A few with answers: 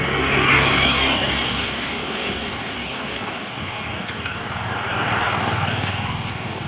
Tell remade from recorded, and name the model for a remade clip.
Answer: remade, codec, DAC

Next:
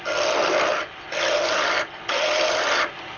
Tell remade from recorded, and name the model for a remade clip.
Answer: recorded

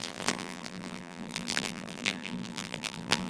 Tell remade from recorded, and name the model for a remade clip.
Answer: remade, vocoder, BigVGAN v2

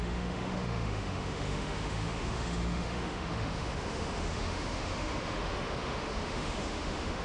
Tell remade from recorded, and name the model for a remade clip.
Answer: remade, autoencoder, DAC-VAE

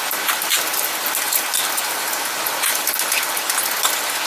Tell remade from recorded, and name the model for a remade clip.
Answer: recorded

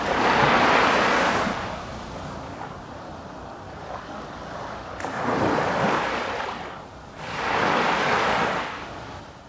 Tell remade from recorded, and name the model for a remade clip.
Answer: recorded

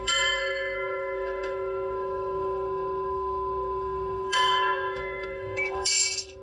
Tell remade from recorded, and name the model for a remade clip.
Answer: remade, codec, SNAC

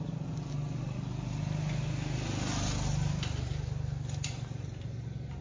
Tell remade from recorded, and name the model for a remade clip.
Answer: recorded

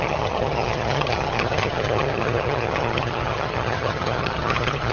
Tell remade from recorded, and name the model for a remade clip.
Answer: remade, vocoder, HiFi-GAN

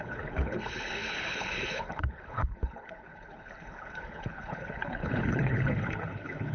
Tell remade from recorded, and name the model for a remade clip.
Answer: remade, codec, HILCodec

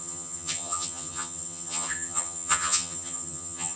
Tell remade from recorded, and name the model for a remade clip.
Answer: remade, vocoder, HiFi-GAN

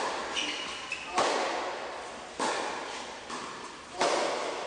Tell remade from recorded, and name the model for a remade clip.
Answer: recorded